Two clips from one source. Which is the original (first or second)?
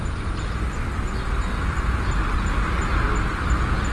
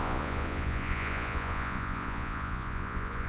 first